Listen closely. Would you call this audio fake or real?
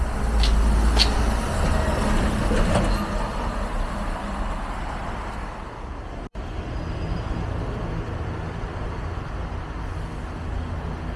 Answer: real